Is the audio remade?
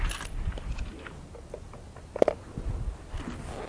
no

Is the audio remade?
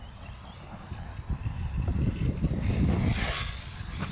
no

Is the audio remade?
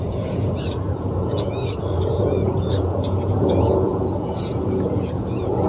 yes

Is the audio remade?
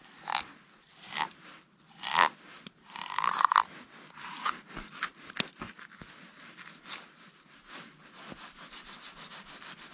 no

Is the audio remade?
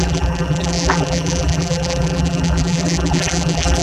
yes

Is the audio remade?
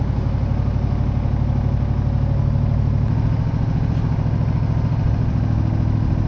no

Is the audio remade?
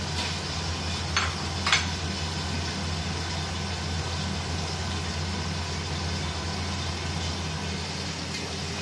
no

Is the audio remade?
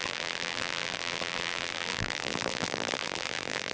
yes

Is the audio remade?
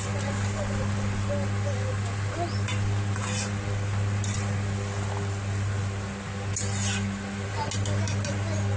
no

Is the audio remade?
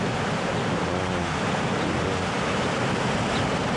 no